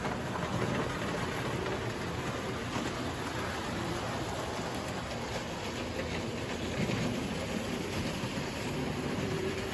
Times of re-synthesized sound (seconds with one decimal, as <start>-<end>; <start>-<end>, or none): 6.3-9.0